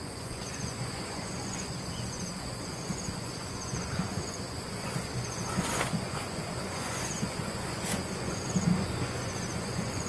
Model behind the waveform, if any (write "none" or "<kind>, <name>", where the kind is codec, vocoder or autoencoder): vocoder, Vocos